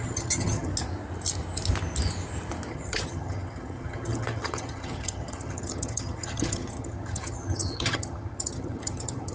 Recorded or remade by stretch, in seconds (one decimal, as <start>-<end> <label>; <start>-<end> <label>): 0.0-0.7 remade; 0.7-2.7 recorded; 2.7-9.3 remade